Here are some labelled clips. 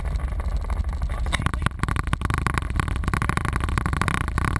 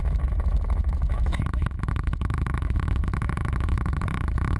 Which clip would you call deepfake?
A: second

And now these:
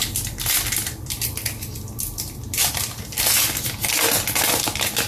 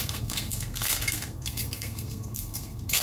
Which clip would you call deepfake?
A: second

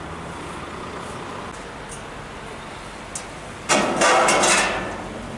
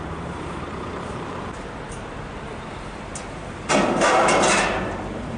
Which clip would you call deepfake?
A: second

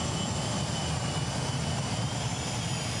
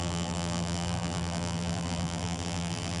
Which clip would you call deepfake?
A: second